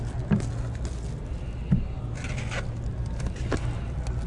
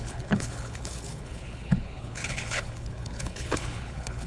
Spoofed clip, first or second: second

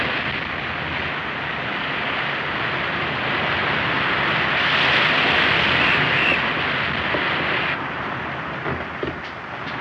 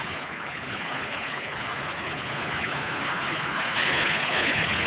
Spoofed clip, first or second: second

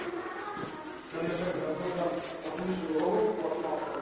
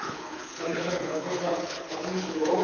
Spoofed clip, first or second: second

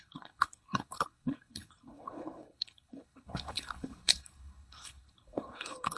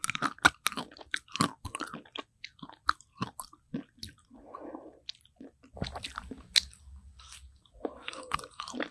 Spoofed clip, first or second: first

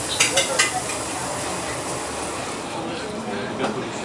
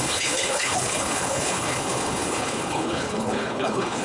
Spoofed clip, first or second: second